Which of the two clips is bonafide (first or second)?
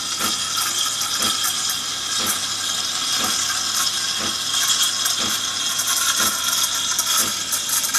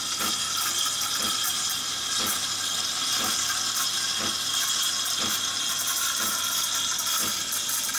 first